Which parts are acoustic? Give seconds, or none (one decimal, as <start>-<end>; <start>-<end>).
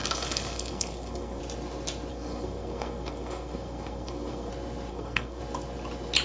1.4-2.1; 4.5-4.9; 5.4-6.2